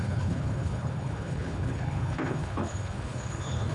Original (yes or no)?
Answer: no